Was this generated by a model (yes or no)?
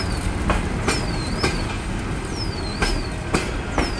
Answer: no